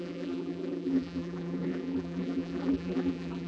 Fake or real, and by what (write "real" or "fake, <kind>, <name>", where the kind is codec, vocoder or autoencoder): fake, vocoder, BigVGAN v2